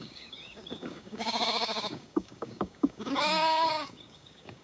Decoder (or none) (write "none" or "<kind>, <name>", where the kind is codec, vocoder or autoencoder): codec, DAC